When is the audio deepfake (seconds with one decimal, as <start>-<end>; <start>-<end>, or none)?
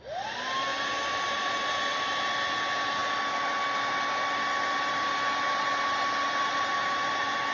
0.7-2.0